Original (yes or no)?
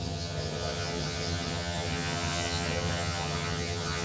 no